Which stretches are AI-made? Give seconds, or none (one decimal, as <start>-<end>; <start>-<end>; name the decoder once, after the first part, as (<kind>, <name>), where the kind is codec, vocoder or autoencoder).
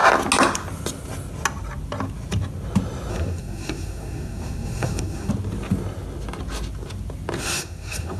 3.1-5.3 (codec, SNAC); 7.4-8.2